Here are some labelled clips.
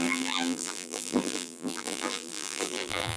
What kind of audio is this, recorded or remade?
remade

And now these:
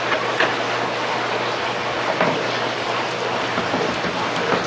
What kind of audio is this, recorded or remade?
recorded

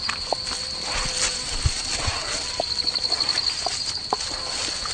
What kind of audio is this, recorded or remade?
recorded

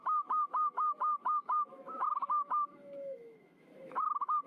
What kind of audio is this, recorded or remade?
remade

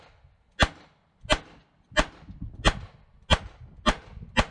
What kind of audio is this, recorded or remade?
recorded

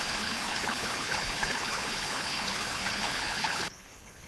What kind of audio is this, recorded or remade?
remade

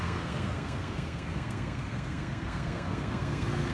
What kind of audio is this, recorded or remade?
remade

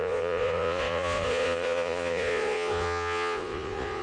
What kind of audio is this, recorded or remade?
remade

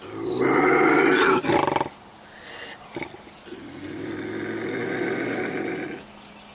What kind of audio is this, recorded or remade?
recorded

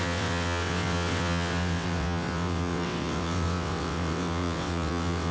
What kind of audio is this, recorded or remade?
remade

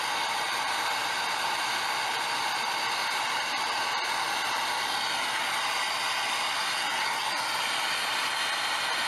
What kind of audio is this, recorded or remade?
recorded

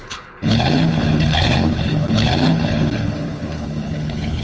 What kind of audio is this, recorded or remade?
remade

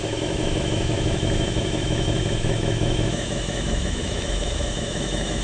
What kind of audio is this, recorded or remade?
remade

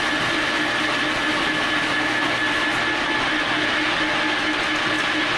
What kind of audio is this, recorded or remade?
recorded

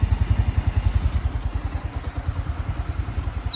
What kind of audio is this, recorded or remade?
recorded